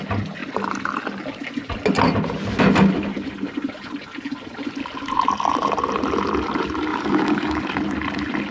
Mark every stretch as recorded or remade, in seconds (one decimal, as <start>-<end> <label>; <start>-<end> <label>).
0.0-6.9 recorded; 6.9-7.6 remade; 7.6-8.5 recorded